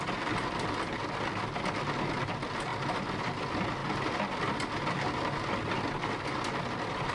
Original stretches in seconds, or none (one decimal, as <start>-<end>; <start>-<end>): 0.0-7.1